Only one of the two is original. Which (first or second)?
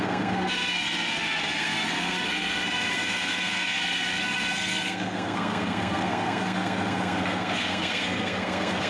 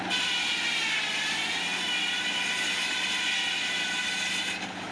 second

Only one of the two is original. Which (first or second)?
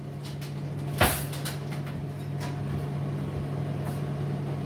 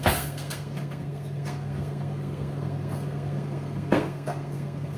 first